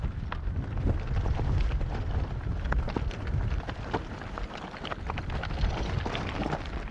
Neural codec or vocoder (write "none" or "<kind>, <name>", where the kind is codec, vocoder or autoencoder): none